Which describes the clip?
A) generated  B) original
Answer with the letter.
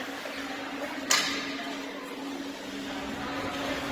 B